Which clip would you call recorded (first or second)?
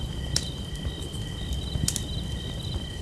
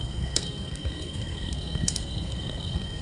first